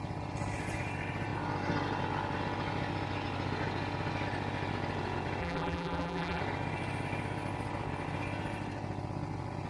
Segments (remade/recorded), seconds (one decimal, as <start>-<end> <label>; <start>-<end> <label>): 0.0-5.4 recorded; 5.4-6.4 remade; 6.4-9.7 recorded